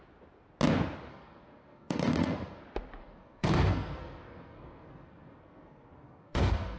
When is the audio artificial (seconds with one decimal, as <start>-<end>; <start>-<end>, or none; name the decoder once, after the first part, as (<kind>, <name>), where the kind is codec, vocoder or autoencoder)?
1.1-2.6 (codec, SNAC); 3.0-6.8